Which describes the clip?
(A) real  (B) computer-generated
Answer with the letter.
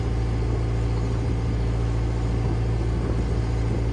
A